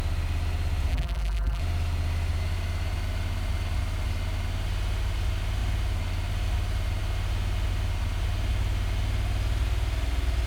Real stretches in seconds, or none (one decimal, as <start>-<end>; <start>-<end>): 0.0-0.9; 1.6-10.5